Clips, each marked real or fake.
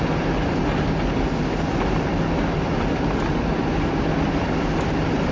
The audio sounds real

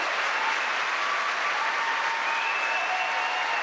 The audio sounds real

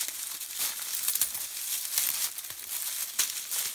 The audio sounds real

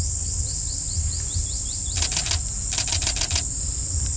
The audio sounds real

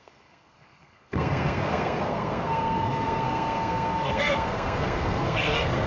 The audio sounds fake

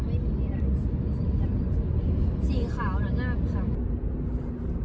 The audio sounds real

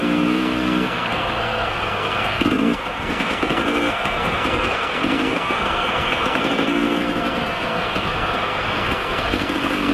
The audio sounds fake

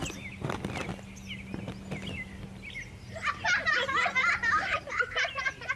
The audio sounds real